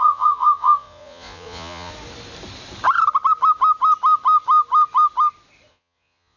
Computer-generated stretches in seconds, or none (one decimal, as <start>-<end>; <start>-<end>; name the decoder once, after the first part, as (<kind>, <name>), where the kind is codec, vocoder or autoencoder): 0.0-1.9 (vocoder, Vocos); 5.7-6.4